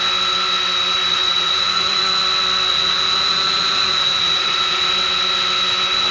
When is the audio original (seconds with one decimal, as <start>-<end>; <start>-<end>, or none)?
0.0-1.1; 2.0-2.7; 4.9-6.1